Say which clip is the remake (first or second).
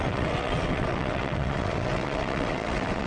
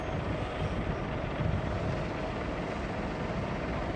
first